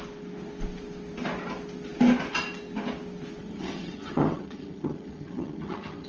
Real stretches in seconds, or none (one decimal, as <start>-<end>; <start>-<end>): 0.0-3.4